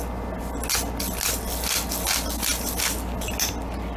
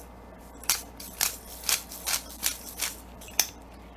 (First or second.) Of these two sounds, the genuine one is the first